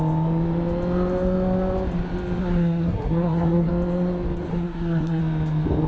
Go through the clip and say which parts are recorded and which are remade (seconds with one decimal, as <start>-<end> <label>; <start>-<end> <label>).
0.0-2.4 recorded; 2.4-3.7 remade; 3.7-4.5 recorded; 4.5-5.2 remade; 5.2-5.9 recorded